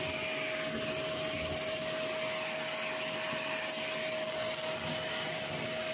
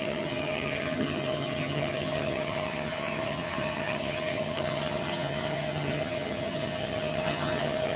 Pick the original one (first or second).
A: first